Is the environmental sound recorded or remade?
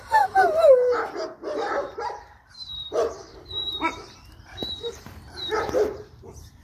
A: remade